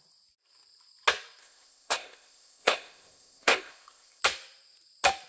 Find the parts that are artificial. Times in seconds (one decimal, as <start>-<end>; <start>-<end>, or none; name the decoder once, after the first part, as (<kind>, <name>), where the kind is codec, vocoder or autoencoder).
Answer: 1.4-4.2 (codec, ZipCodec)